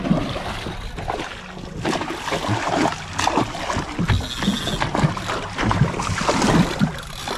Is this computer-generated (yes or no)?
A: no